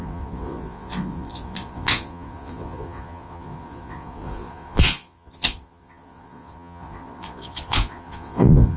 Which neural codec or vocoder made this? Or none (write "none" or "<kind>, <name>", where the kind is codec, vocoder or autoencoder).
vocoder, Vocos